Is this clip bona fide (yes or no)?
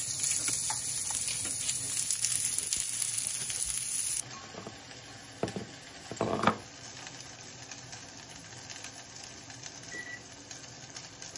yes